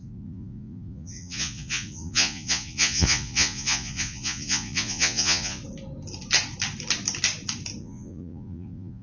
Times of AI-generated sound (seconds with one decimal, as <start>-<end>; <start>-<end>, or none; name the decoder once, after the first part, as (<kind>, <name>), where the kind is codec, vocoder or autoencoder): 0.0-5.6 (vocoder, Vocos); 7.8-9.0